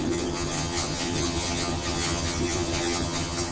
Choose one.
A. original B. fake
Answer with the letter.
B